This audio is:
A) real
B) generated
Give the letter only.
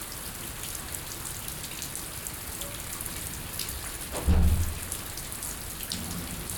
A